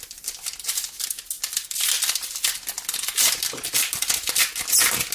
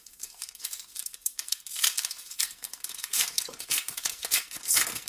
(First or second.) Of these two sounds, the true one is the first